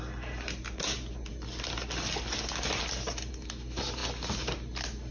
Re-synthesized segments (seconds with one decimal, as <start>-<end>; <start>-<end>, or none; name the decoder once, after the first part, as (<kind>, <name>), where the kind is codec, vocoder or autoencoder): none